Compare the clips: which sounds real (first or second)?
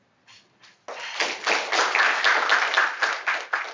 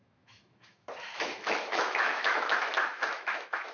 first